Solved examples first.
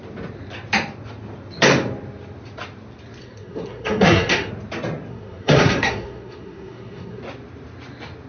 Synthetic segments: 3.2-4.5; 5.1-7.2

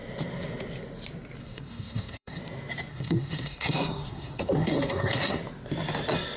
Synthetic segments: 1.4-2.4; 2.9-5.4

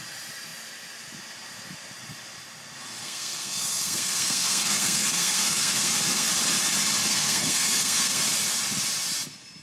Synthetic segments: 3.0-6.3; 7.1-8.2

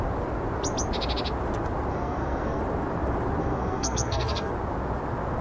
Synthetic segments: 1.9-2.6; 3.4-4.5

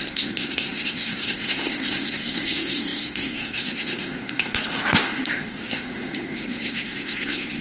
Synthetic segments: 0.0-7.6

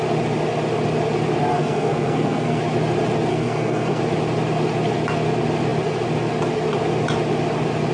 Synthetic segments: 1.5-2.6; 3.3-4.0

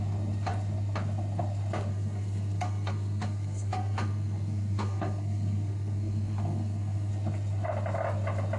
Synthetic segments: 1.9-7.1